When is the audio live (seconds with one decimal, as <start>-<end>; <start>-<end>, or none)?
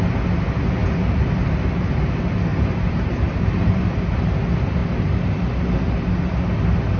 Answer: 0.0-0.8; 1.9-2.5; 4.1-7.0